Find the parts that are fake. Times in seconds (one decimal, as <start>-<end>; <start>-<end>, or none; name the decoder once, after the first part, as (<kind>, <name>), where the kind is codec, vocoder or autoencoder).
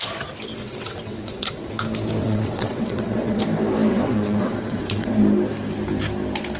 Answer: 0.6-1.7 (vocoder, WaveNeXt); 2.2-3.4; 3.9-5.1